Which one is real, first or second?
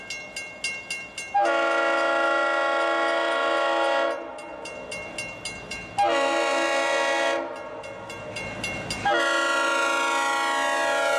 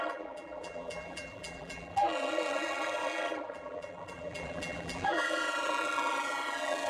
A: first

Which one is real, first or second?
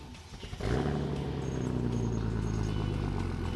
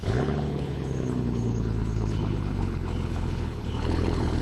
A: first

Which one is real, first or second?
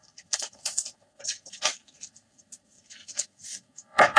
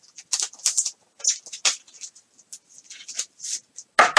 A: second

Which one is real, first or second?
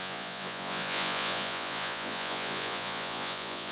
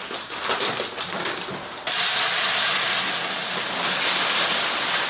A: second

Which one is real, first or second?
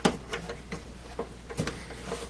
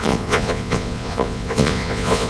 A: first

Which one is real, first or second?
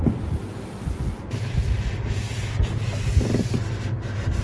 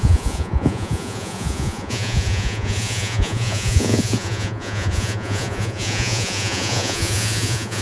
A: first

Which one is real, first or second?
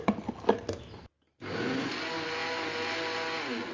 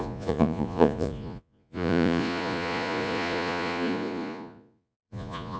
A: first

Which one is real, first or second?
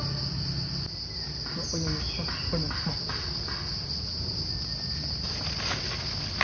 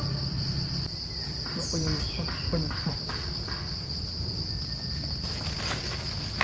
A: first